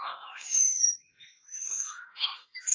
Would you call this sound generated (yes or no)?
yes